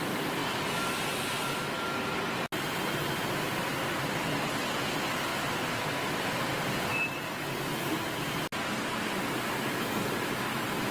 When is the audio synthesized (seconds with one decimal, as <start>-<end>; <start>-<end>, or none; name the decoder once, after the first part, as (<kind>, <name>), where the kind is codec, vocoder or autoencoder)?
none